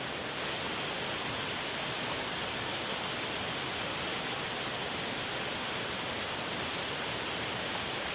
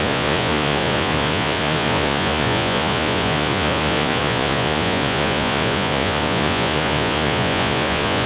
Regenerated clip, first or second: second